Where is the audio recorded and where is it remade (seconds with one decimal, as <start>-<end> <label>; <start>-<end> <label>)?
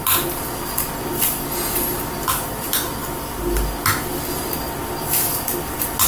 0.0-6.1 recorded